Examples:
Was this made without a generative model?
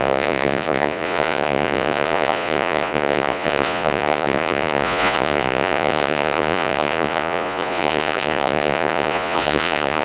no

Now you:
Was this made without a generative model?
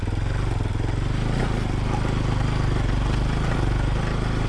yes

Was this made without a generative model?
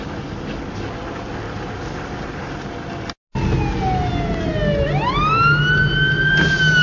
yes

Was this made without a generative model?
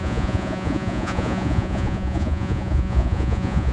no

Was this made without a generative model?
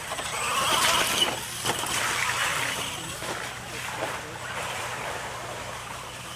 yes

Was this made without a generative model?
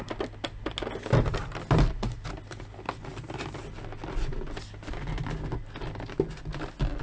yes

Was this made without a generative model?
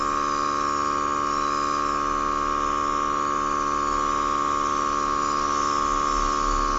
yes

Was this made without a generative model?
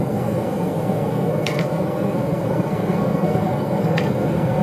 no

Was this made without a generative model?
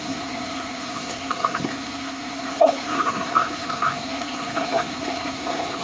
no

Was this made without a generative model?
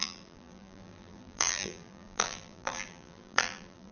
no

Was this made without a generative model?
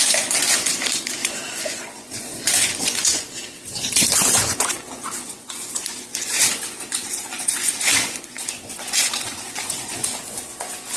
no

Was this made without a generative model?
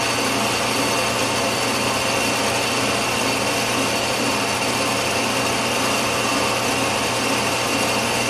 yes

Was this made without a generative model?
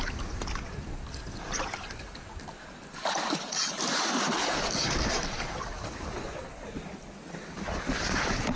yes